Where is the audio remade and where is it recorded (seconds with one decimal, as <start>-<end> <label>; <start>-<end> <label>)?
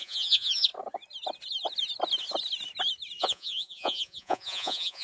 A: 0.0-0.7 remade; 0.7-3.2 recorded; 3.2-5.0 remade